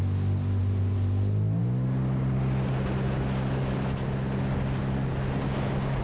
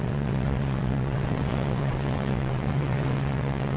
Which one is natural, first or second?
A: first